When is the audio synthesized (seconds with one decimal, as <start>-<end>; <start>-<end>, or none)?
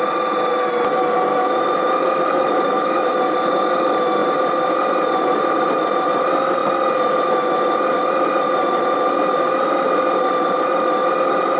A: 1.3-3.1